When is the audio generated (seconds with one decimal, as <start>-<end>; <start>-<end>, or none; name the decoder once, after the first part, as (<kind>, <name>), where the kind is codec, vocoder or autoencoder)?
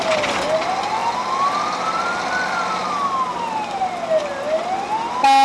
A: none